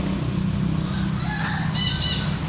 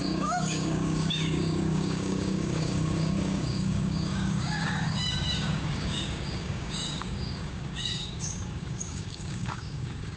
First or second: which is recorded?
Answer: first